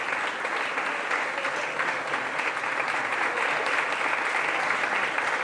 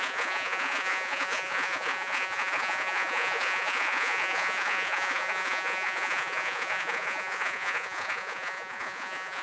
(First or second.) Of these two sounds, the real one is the first